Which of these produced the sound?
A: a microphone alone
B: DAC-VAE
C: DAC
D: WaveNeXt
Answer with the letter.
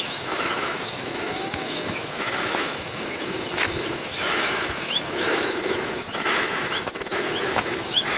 B